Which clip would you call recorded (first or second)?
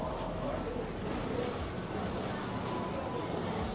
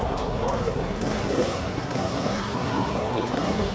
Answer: first